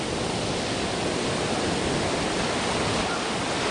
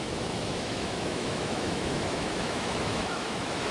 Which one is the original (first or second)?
first